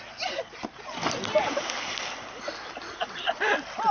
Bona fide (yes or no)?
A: yes